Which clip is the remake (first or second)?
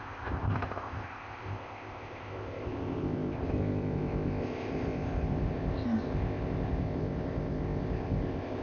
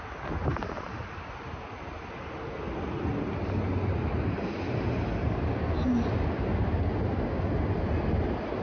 first